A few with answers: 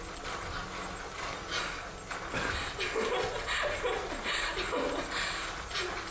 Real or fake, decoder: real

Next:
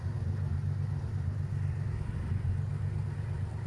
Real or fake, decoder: real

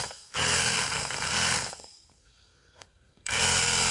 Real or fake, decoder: fake, codec, SNAC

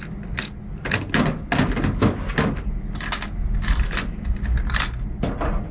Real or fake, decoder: real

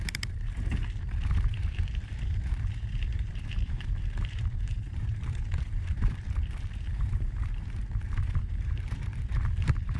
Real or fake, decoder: fake, vocoder, BigVGAN v2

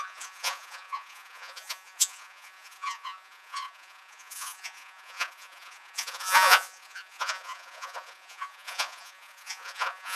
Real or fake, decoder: fake, vocoder, Vocos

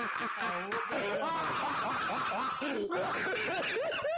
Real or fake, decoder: real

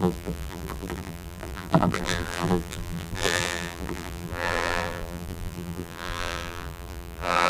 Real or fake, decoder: fake, vocoder, BigVGAN v2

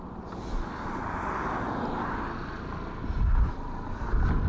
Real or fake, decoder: real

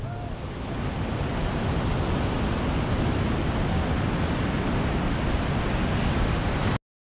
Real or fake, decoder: real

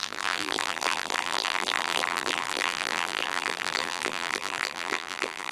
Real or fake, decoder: fake, vocoder, BigVGAN v2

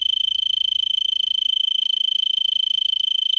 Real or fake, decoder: fake, autoencoder, DAC-VAE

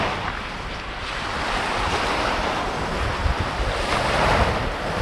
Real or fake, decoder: fake, vocoder, BigVGAN v2